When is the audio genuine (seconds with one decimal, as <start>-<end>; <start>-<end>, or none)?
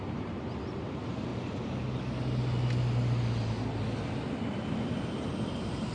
1.3-4.8